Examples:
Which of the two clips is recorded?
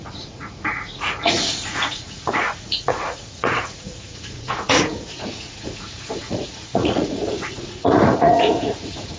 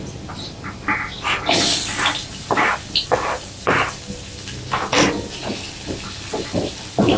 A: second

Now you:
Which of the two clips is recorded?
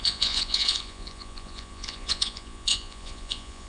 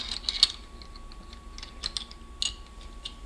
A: second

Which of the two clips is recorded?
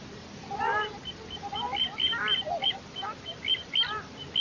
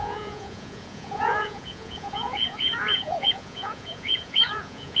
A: first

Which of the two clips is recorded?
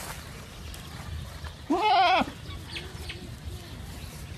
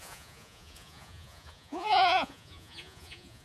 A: first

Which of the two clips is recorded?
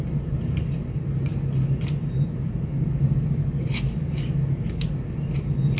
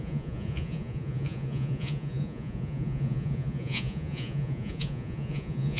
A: first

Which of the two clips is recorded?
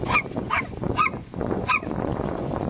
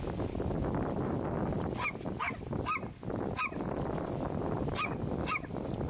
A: second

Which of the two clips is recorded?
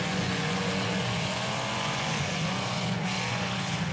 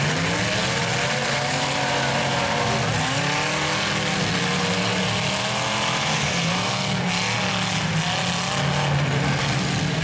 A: second